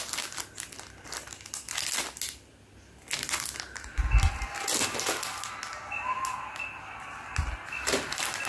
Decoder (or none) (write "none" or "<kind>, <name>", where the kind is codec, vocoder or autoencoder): none